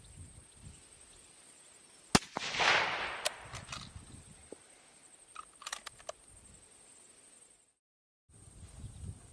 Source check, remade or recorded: recorded